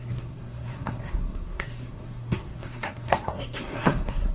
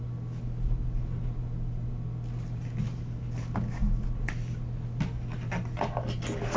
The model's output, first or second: first